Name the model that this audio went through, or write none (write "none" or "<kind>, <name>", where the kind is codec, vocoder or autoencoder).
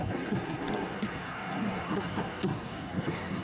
codec, SNAC